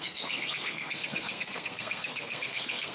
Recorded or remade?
remade